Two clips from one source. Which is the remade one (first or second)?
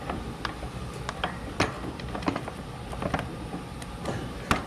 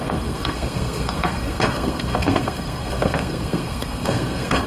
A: second